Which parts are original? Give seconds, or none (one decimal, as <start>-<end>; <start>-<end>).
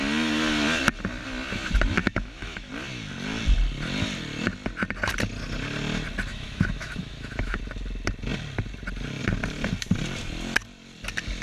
0.0-2.0; 2.7-6.3; 7.6-11.4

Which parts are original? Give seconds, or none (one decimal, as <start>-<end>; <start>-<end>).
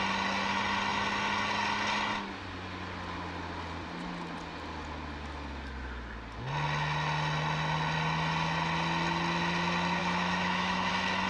0.0-10.0; 10.9-11.3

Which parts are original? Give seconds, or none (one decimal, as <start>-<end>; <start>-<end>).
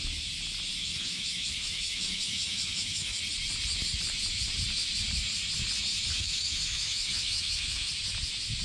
0.0-0.8; 3.2-6.1; 7.9-8.6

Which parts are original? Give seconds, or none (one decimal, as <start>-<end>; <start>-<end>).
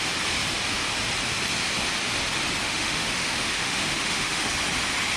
0.0-2.6; 4.5-5.2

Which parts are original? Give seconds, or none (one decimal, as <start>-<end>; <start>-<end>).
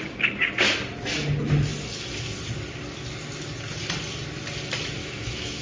0.0-5.0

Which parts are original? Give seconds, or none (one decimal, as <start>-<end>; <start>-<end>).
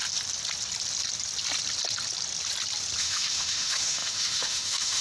0.0-3.0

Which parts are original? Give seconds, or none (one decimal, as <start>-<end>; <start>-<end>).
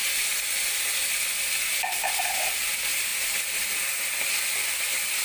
0.0-5.2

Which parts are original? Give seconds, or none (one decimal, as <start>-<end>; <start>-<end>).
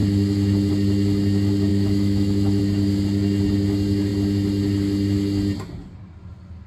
0.0-1.7; 2.6-6.7